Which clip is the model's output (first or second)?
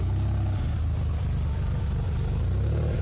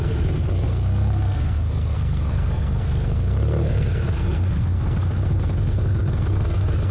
second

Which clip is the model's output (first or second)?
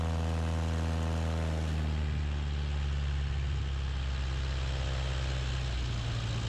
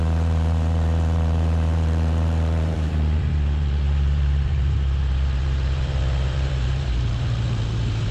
second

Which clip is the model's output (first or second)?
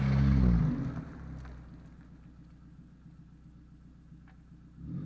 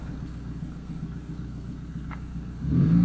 second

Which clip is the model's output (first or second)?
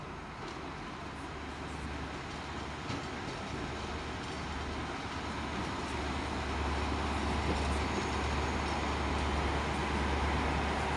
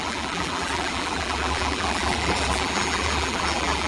second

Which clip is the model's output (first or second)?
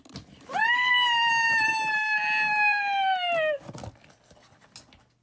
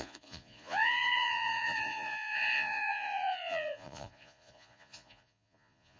second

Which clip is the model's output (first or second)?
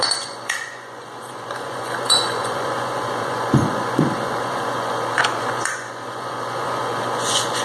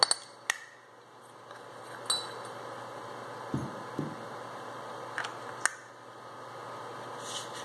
first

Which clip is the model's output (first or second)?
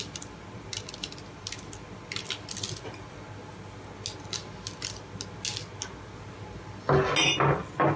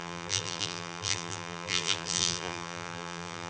second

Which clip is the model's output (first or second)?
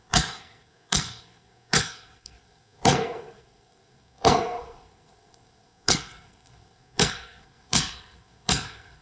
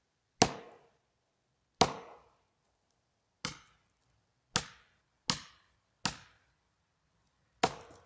first